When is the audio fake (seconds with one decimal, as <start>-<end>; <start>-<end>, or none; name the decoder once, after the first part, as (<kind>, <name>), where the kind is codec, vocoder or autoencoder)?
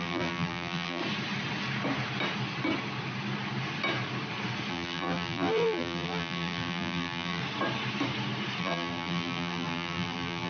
0.0-1.0 (vocoder, BigVGAN v2); 4.7-7.4; 8.6-10.5